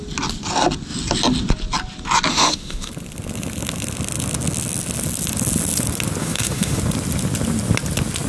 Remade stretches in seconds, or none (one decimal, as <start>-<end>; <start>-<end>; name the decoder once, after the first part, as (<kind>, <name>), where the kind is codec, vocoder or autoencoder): 2.3-2.9 (autoencoder, DAC-VAE); 6.2-6.8